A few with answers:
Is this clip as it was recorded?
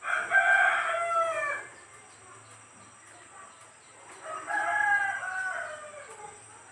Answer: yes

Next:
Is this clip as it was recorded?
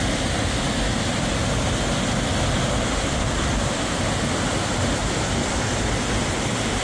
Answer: yes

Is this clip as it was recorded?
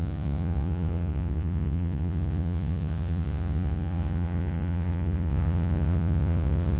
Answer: no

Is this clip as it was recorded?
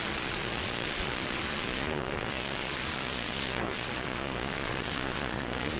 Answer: no